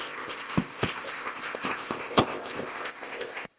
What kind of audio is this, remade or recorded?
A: remade